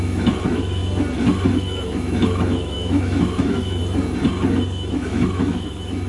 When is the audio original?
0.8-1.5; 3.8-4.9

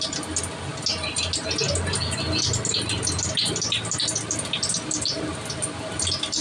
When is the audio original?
0.0-6.4

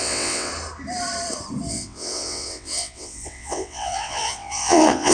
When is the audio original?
0.5-1.7

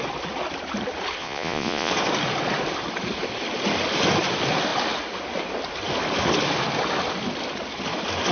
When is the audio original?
0.0-1.2; 1.9-8.3